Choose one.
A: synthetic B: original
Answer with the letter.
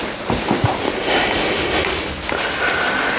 B